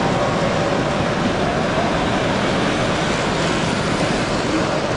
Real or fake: real